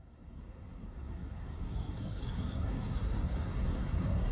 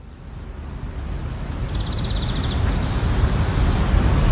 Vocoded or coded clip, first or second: first